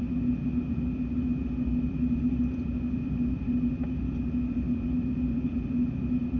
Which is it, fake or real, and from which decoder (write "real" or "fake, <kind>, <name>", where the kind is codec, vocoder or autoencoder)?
real